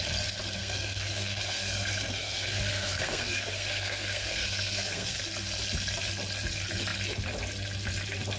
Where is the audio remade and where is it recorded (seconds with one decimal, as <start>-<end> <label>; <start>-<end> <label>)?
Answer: 0.0-0.6 recorded; 0.6-5.2 remade; 5.2-8.4 recorded